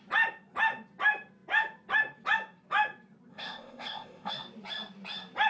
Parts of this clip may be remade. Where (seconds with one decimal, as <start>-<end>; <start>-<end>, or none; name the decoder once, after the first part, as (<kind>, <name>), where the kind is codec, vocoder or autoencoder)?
3.3-4.3 (codec, ZipCodec)